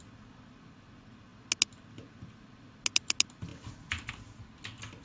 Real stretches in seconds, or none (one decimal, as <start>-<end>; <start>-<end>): 0.0-5.0